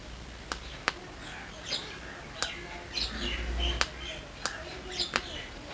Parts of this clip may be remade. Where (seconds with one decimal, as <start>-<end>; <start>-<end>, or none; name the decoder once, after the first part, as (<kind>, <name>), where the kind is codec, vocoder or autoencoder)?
none